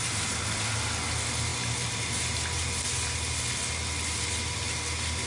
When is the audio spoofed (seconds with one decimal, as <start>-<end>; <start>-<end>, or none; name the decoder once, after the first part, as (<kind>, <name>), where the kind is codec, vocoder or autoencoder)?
none